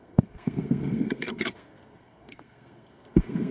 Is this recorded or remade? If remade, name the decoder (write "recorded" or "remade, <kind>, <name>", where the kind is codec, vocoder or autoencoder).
remade, codec, SNAC